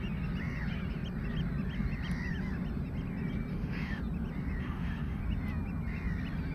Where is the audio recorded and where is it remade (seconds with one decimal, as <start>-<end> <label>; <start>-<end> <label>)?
0.0-3.5 recorded; 3.5-4.0 remade; 4.0-4.6 recorded; 4.6-5.2 remade; 5.2-6.5 recorded